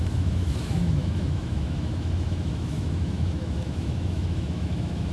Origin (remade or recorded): remade